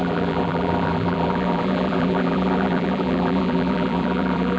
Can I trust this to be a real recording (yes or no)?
no